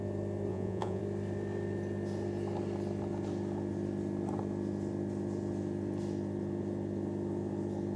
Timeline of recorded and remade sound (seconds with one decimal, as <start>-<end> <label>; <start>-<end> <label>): 0.0-0.5 recorded; 0.5-1.0 remade; 1.0-8.0 recorded